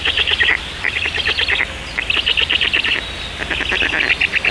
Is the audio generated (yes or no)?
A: no